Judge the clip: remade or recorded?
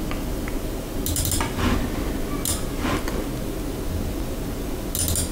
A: recorded